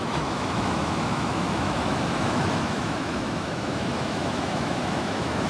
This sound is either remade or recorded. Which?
remade